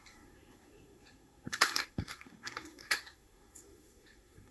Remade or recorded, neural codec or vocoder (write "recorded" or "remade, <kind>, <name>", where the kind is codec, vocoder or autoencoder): remade, codec, SNAC